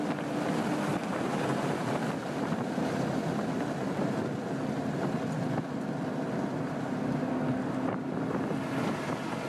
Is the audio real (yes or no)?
yes